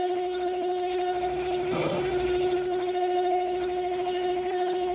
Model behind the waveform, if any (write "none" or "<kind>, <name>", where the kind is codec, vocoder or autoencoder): codec, SNAC